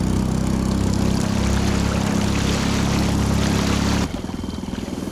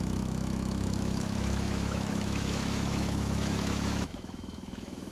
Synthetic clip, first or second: second